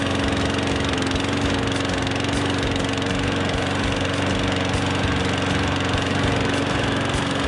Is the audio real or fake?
real